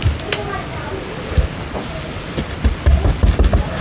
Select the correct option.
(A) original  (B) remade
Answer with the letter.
A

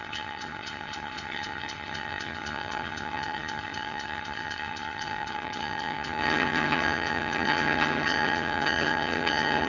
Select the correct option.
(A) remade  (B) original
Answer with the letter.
A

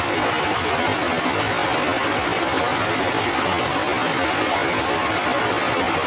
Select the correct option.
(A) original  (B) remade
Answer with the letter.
A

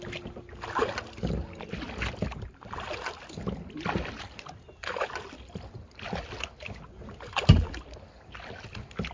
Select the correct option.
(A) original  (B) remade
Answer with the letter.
A